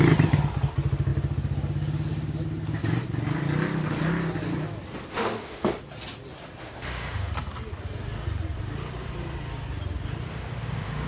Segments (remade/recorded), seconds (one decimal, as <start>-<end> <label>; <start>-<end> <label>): 0.0-5.1 recorded; 5.1-5.8 remade; 5.8-6.6 recorded; 6.6-7.3 remade; 7.3-10.3 recorded; 10.3-11.1 remade

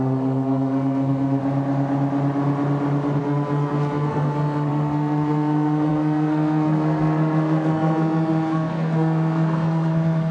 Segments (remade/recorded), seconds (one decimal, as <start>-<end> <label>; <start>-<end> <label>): 0.0-1.4 remade; 1.4-3.2 recorded; 3.2-10.3 remade

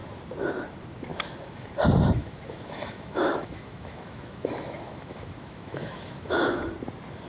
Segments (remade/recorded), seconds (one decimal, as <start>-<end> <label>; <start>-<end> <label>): 0.0-1.1 recorded; 1.1-1.7 remade; 1.7-2.2 recorded; 2.2-6.6 remade; 6.6-7.3 recorded

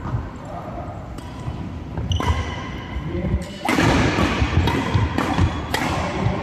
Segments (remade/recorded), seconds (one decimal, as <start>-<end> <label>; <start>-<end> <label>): 0.0-6.4 recorded

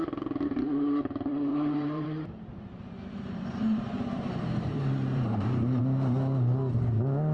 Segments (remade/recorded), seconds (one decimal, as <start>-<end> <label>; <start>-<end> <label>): 0.0-1.5 recorded; 1.5-5.8 remade; 5.8-7.3 recorded

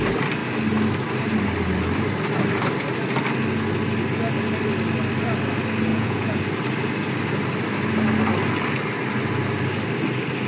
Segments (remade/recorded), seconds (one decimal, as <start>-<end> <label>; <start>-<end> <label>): 0.0-5.9 recorded; 5.9-6.4 remade; 6.4-10.5 recorded

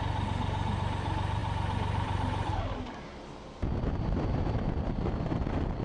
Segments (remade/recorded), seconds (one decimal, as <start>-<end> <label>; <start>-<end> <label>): 0.0-5.8 recorded

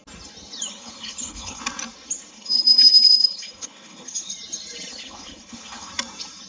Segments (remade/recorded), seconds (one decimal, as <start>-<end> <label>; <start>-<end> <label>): 0.0-0.7 recorded; 0.7-1.6 remade; 1.6-2.3 recorded; 2.3-4.3 remade; 4.3-4.9 recorded; 4.9-5.9 remade; 5.9-6.5 recorded